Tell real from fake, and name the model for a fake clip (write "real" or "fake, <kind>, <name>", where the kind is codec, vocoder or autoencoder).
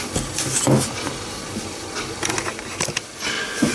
real